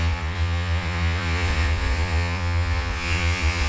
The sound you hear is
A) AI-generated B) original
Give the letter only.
A